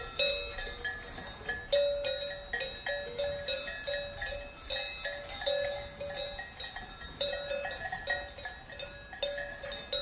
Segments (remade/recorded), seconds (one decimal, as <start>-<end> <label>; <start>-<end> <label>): 0.0-10.0 recorded